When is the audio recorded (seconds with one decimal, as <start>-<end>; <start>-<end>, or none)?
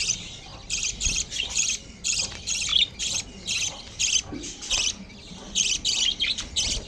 0.0-6.9